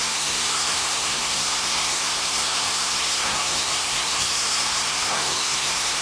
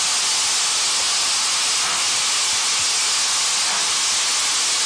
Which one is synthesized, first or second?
first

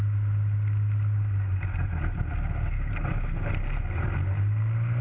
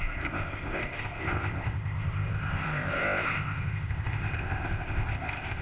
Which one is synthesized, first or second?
second